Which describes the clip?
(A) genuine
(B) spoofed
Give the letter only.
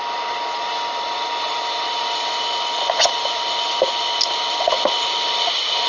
A